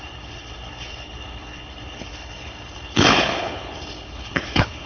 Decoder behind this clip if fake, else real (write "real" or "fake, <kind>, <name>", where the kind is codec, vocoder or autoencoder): fake, codec, HILCodec